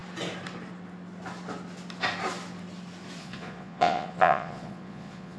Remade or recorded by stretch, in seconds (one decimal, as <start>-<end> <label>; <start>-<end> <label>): 0.0-3.2 recorded; 3.2-5.4 remade